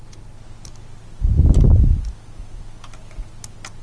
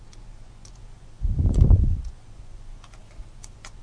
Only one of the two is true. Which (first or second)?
first